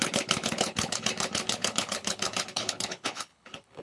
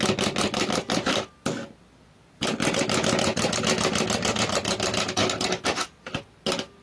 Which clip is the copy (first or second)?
first